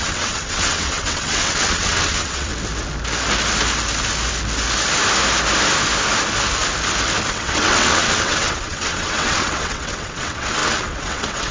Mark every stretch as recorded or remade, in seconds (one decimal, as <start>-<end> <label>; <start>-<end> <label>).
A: 0.0-2.5 remade; 2.5-7.3 recorded; 7.3-11.5 remade